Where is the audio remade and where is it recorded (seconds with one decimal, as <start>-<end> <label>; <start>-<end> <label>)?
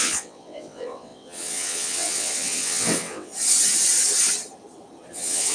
0.0-3.3 remade; 3.3-5.1 recorded; 5.1-5.5 remade